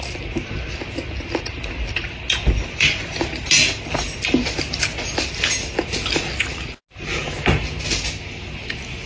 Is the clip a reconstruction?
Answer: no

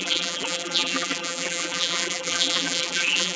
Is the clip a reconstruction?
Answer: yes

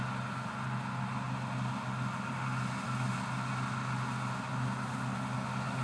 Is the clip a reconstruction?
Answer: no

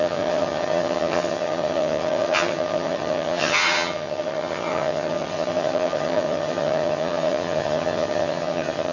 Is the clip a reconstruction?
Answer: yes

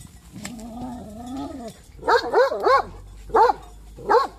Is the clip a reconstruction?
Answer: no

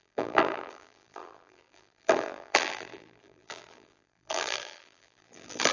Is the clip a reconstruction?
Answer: yes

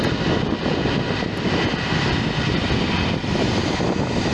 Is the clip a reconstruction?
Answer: no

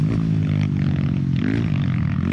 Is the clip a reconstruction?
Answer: no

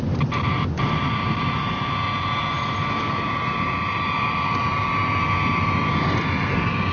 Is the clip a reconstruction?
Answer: no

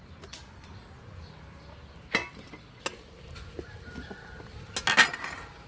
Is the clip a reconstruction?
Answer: no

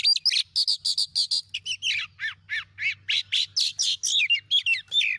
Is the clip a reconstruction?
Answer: no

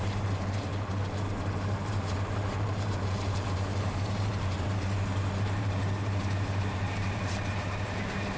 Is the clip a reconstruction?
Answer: yes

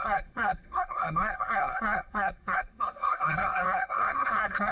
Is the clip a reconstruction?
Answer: yes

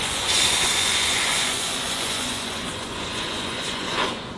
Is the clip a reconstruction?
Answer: yes